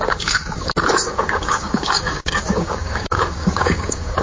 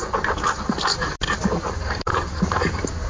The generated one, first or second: first